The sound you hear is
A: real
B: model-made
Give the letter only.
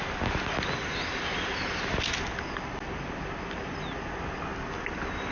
A